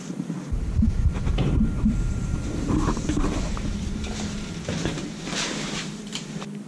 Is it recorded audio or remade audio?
remade